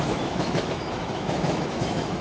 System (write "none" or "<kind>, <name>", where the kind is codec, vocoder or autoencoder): autoencoder, DAC-VAE